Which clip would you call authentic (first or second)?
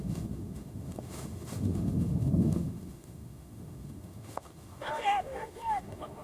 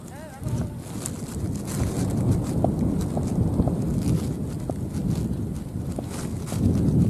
second